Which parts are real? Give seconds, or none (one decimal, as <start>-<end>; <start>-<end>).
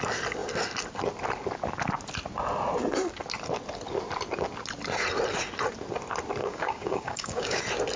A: 0.0-6.4; 7.6-8.0